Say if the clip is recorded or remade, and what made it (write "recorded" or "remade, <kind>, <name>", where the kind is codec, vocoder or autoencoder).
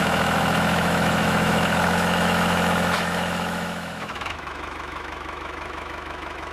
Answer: remade, autoencoder, DAC-VAE